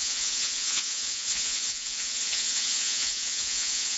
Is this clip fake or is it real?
fake